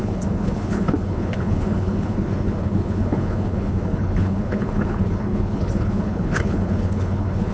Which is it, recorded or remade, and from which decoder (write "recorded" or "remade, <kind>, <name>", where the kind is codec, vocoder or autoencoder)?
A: remade, codec, HILCodec